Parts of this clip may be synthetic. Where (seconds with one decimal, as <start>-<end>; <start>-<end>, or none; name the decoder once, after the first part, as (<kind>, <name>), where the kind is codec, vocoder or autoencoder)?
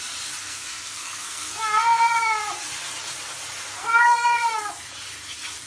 0.4-2.2 (codec, SNAC); 3.8-4.7